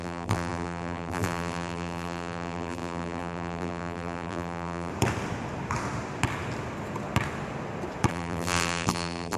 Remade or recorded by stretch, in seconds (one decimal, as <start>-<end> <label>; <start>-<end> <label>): 0.0-4.9 remade; 4.9-8.1 recorded; 8.1-9.4 remade